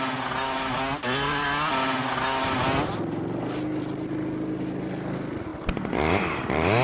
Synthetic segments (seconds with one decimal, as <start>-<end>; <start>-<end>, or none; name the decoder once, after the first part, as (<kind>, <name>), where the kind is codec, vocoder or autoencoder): none